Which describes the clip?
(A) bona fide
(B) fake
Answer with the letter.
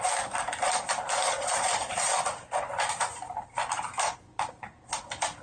B